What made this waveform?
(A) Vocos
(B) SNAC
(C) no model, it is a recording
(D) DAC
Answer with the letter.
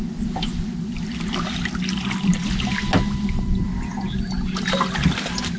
C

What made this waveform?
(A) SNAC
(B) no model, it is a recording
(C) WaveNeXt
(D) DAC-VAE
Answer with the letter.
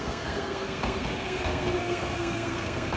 A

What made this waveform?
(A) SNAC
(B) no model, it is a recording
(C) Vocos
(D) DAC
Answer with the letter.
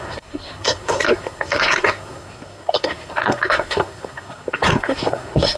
A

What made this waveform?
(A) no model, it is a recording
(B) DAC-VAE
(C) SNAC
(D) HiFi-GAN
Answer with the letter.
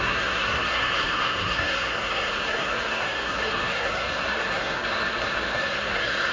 C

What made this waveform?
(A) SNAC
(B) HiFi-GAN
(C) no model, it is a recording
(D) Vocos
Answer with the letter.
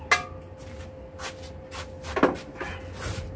C